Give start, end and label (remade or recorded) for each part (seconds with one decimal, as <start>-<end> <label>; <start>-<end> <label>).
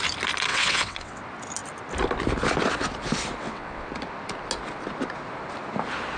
0.0-0.5 recorded; 0.5-1.2 remade; 1.2-3.4 recorded; 3.4-3.9 remade; 3.9-6.2 recorded